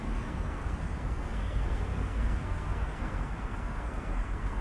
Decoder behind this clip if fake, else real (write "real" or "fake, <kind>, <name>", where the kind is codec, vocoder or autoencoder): fake, codec, SNAC